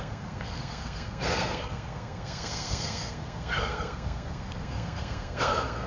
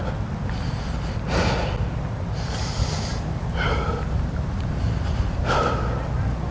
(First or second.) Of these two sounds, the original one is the second